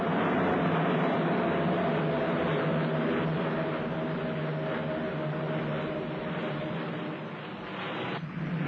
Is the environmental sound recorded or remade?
recorded